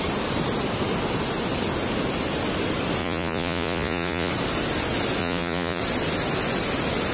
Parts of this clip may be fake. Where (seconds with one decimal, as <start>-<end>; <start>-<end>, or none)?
3.0-4.3; 5.2-5.8